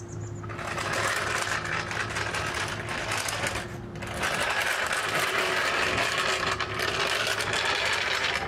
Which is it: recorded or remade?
recorded